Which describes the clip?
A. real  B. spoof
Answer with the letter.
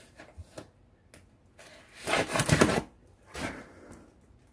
A